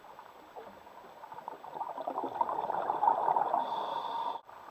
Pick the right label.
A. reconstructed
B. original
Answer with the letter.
B